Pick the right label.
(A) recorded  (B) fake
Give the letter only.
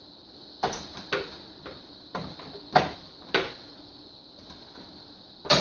A